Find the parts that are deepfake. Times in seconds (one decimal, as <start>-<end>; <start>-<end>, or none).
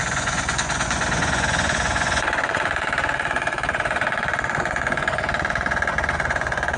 0.0-6.8